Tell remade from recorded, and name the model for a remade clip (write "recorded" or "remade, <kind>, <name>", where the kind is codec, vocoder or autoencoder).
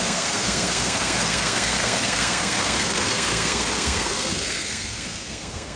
remade, codec, SNAC